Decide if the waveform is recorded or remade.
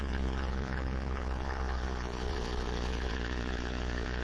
remade